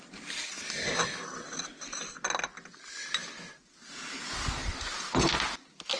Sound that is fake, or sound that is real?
real